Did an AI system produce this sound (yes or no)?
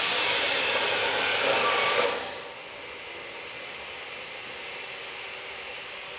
no